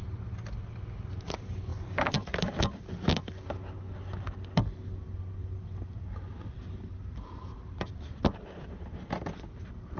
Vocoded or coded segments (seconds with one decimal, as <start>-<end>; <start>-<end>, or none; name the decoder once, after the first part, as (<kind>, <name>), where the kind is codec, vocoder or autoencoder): none